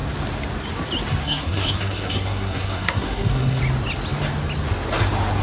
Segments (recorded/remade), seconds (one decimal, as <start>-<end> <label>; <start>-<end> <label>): 0.0-1.2 recorded; 1.2-3.6 remade; 3.6-5.4 recorded